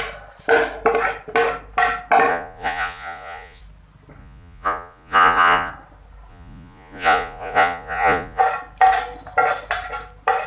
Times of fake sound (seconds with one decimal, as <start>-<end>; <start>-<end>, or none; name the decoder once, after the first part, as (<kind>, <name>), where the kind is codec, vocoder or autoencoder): 2.3-3.6 (vocoder, Vocos); 4.2-5.7; 6.3-8.4

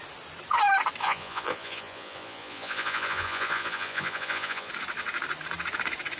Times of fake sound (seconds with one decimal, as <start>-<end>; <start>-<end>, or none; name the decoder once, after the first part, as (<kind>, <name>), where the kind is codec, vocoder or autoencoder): 1.0-4.7 (vocoder, Vocos)

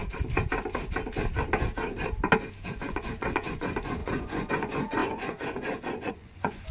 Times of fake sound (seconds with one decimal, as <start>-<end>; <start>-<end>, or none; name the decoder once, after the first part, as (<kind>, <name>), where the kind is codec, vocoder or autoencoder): 2.7-6.7 (vocoder, Vocos)

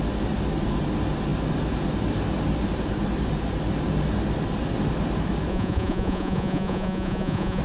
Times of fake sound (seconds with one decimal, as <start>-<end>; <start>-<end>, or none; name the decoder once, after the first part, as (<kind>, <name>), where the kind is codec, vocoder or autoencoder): 5.5-7.6 (vocoder, Vocos)

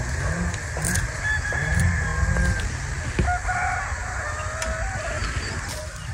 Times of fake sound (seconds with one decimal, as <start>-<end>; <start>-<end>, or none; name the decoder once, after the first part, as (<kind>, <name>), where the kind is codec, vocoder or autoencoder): none

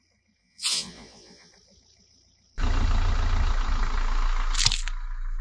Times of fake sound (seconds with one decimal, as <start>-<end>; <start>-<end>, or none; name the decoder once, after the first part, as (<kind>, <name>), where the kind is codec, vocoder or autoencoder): 0.4-1.5 (vocoder, Vocos)

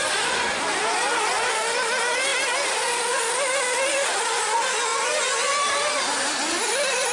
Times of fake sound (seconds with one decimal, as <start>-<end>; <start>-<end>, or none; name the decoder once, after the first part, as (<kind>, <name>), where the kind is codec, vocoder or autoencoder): 0.0-0.6 (vocoder, Vocos); 4.9-5.5

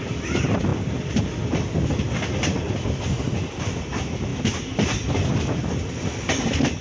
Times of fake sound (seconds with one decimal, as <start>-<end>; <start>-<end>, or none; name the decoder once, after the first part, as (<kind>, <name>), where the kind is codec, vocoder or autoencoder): none